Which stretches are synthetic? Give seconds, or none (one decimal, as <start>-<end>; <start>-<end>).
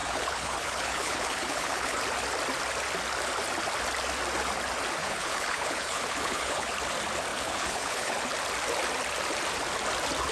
0.0-2.0; 5.0-6.7; 7.3-8.1